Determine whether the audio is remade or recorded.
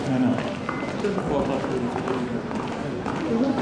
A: recorded